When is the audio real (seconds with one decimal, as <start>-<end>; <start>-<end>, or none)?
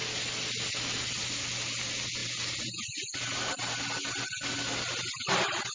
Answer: 0.0-5.7